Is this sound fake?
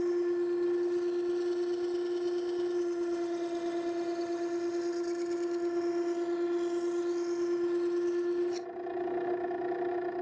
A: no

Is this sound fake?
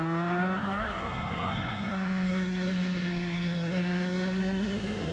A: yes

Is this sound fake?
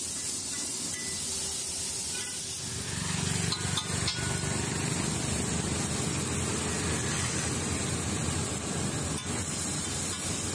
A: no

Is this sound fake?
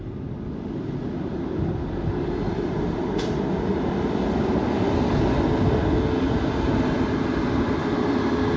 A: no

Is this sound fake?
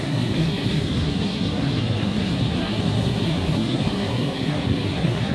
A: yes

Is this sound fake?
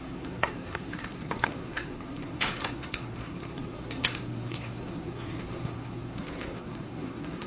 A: yes